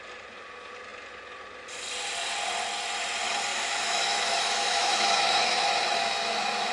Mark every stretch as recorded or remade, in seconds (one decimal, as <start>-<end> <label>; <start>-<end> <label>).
0.0-3.5 recorded; 3.5-6.7 remade